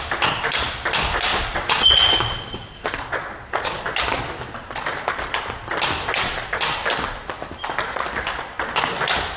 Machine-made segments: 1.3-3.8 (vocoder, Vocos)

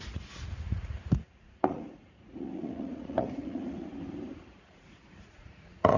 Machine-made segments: 0.0-3.9 (vocoder, Vocos); 4.6-6.0

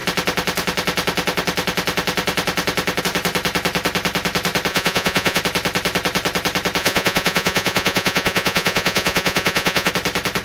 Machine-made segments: 4.7-5.4 (vocoder, Vocos); 6.8-9.9